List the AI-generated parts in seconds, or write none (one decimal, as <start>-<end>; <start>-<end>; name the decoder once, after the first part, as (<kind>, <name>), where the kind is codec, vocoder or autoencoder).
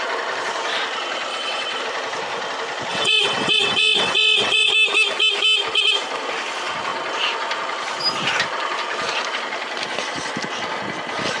1.3-1.8 (vocoder, WaveNeXt); 2.9-4.7